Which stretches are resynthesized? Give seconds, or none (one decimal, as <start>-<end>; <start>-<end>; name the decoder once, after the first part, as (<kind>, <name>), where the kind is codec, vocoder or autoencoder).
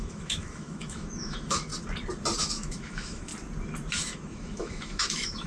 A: 0.0-1.7 (autoencoder, DAC-VAE); 2.4-3.3; 4.0-5.5